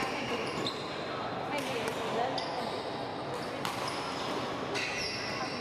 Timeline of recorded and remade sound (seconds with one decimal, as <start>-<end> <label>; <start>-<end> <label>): 0.0-1.9 remade; 1.9-5.6 recorded